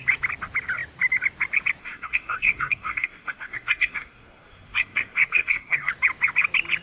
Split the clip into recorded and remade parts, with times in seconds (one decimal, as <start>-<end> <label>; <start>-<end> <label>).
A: 0.0-1.8 recorded; 1.8-5.9 remade; 5.9-6.8 recorded

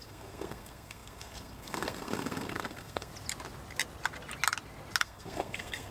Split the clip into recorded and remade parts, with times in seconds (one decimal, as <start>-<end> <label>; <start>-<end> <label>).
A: 0.0-3.1 remade; 3.1-5.0 recorded; 5.0-5.9 remade